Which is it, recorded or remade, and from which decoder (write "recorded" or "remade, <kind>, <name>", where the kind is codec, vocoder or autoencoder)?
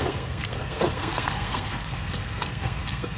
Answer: remade, codec, SNAC